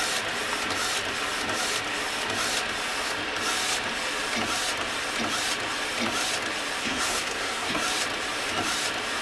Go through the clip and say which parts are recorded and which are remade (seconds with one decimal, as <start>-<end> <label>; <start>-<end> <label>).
0.0-6.8 recorded; 6.8-7.8 remade; 7.8-9.2 recorded